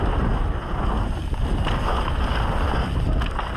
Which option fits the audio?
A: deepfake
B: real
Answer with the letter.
B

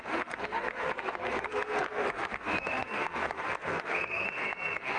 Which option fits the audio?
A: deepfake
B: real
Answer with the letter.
A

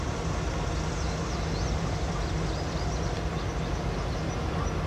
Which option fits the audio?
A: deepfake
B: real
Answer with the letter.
B